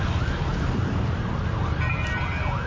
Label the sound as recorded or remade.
recorded